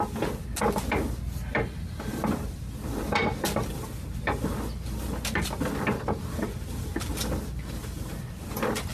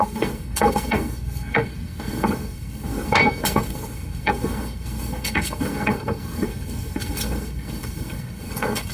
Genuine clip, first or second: first